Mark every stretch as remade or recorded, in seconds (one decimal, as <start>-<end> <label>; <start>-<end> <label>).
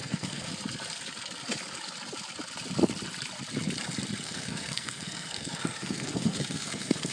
0.0-0.5 remade; 0.5-4.2 recorded; 4.2-7.1 remade